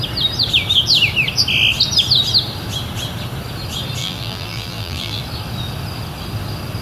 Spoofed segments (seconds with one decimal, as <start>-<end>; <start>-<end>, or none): 4.0-5.2